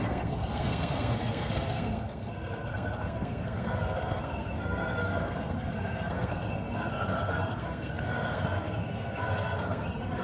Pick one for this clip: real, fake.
fake